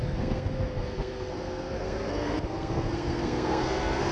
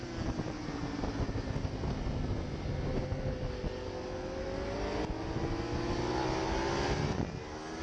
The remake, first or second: first